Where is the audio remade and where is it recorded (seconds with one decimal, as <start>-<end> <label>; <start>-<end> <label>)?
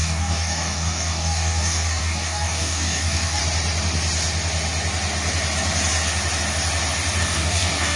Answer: 0.0-3.4 remade; 3.4-7.2 recorded; 7.2-8.0 remade